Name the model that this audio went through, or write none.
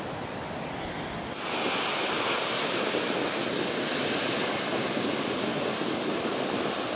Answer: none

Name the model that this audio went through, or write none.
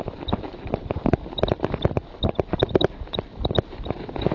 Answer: none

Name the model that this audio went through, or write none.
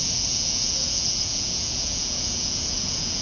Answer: vocoder, Vocos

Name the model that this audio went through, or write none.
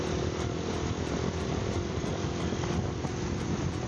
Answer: none